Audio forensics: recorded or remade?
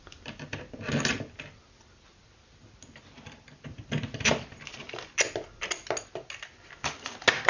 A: recorded